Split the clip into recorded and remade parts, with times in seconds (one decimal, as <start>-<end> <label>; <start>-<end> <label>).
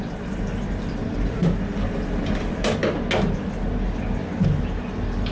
0.0-1.4 remade; 1.4-2.4 recorded; 2.4-2.8 remade; 2.8-4.7 recorded; 4.7-5.3 remade